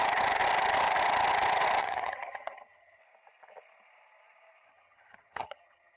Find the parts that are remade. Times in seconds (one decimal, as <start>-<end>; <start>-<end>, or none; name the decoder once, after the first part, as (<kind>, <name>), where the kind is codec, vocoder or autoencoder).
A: 1.8-3.0 (vocoder, HiFi-GAN); 4.7-6.0